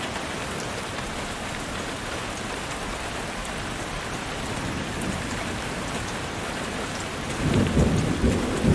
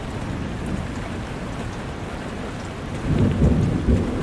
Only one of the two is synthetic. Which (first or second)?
first